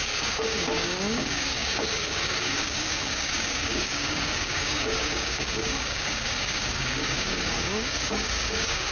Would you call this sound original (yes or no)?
no